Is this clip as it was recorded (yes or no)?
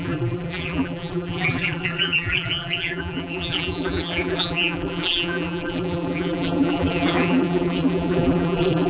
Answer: no